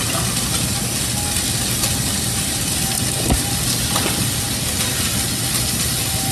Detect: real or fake real